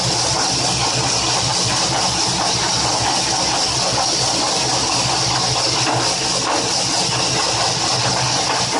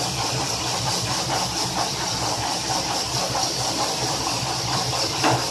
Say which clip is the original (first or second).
first